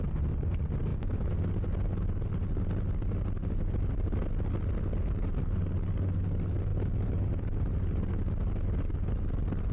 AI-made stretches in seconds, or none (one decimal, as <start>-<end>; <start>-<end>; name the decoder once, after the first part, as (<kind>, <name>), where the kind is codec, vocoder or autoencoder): 0.9-1.4 (vocoder, BigVGAN v2); 3.4-4.2; 6.7-8.1